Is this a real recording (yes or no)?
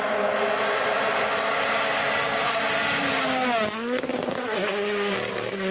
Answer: yes